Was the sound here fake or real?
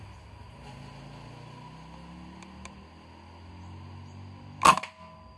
real